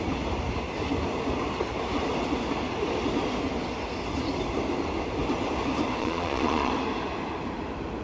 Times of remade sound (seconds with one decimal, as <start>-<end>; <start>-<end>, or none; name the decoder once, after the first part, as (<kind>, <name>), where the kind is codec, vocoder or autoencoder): 6.0-6.7 (vocoder, Vocos)